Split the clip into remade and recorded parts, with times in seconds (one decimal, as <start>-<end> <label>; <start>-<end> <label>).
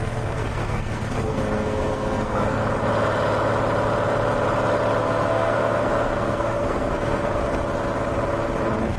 0.0-2.6 remade; 2.6-5.0 recorded; 5.0-7.4 remade; 7.4-9.0 recorded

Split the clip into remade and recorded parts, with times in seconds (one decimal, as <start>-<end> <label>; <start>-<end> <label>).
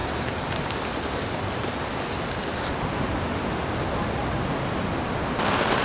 0.0-5.8 recorded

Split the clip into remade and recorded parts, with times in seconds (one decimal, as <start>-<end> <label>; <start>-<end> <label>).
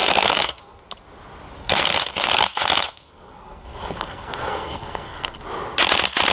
0.0-0.8 remade; 0.8-1.6 recorded; 1.6-5.4 remade; 5.4-6.3 recorded